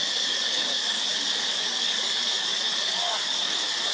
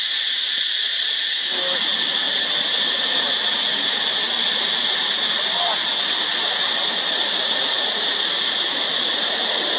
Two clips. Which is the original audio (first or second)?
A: second